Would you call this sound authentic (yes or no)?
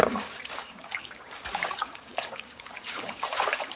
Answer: no